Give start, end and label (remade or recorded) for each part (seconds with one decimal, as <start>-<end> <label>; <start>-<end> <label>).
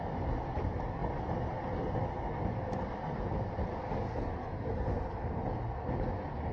0.0-6.5 recorded